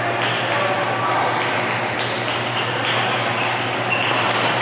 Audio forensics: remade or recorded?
recorded